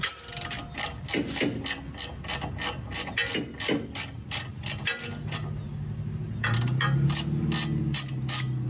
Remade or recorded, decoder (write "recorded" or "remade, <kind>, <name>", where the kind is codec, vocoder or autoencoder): recorded